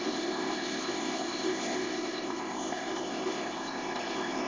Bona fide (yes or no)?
no